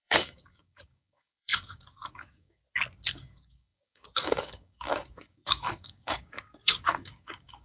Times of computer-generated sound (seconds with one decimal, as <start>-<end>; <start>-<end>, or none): 0.0-2.6; 3.1-7.6